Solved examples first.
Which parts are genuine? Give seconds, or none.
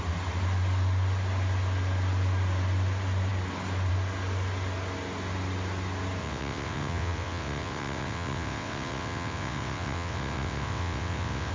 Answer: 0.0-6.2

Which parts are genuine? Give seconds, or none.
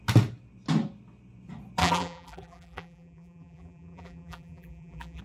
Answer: 0.0-1.8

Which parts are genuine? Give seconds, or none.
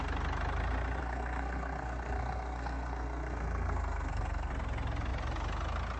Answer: 0.0-1.0; 4.5-6.0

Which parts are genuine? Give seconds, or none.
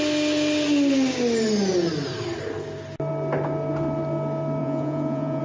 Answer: 0.0-4.6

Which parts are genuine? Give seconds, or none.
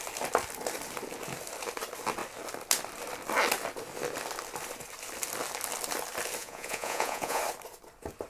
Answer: 0.0-6.4; 7.4-8.3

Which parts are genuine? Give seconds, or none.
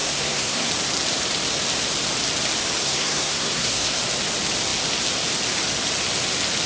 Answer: 0.7-2.8; 4.0-6.7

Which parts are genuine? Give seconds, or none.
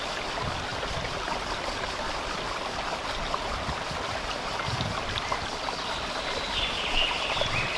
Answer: 0.0-7.8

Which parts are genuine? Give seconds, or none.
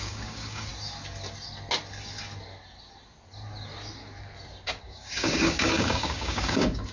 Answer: 0.7-4.8